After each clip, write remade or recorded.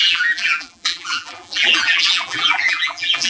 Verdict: remade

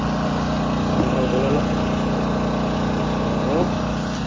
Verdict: recorded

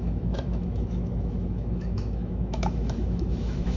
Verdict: remade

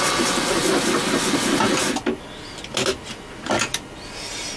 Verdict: recorded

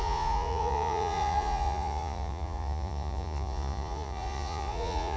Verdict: remade